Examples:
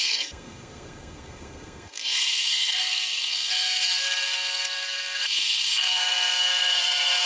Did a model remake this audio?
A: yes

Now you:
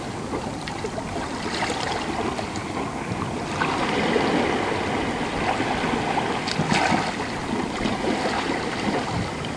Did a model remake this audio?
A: no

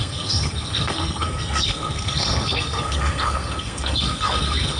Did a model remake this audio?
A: yes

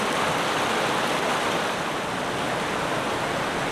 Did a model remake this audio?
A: no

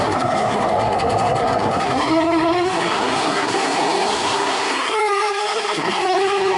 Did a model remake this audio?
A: yes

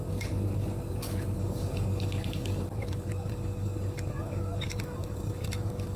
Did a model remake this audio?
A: yes